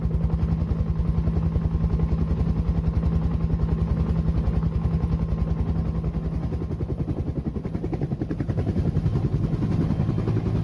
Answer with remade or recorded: recorded